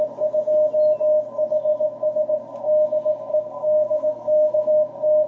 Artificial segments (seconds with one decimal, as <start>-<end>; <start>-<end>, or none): 3.3-4.7